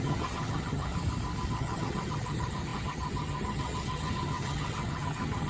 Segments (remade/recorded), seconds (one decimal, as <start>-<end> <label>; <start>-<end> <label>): 0.0-0.9 remade; 0.9-1.5 recorded; 1.5-5.5 remade